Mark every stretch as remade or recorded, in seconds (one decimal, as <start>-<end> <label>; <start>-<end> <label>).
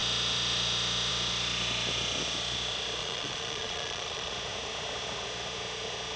0.0-3.0 recorded; 3.0-4.3 remade; 4.3-6.2 recorded